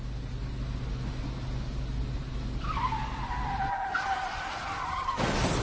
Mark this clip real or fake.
real